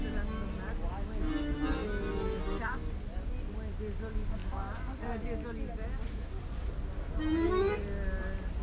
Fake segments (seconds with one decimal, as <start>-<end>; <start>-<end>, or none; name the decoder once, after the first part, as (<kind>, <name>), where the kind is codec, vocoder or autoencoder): none